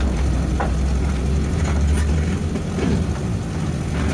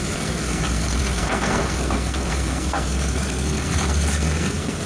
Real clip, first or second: first